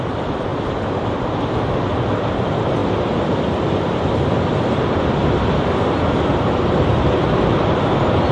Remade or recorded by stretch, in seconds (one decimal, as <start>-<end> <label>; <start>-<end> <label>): 0.0-0.5 remade; 0.5-2.1 recorded; 2.1-8.3 remade